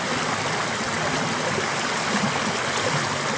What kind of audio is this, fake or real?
real